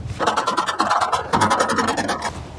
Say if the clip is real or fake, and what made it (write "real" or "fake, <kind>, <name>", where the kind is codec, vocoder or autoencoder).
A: fake, vocoder, BigVGAN v2